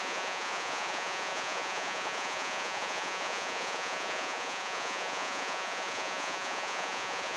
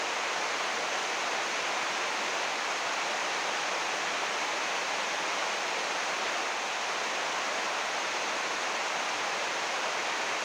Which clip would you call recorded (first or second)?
second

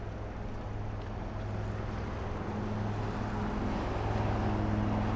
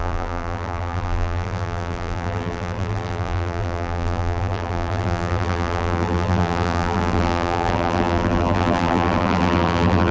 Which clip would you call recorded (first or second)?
first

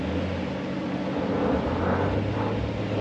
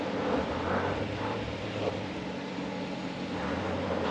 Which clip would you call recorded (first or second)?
first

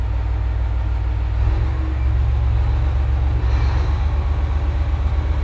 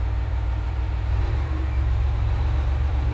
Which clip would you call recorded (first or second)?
first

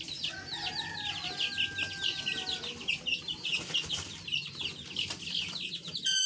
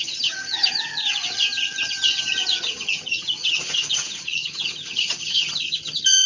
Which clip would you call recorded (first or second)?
first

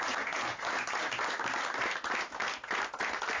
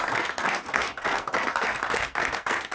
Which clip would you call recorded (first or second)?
first